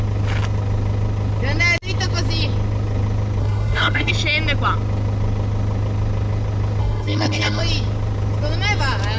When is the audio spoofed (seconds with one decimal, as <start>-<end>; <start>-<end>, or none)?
3.4-4.1; 6.8-7.6